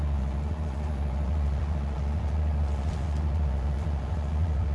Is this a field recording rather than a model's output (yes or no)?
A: no